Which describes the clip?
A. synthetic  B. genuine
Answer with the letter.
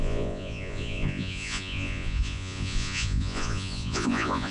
A